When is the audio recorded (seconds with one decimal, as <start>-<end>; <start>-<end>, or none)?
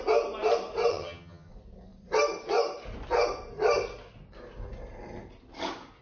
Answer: 0.0-0.9; 1.5-6.0